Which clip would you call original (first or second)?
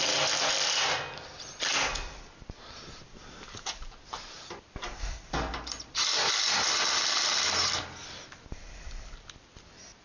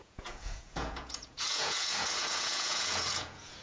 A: first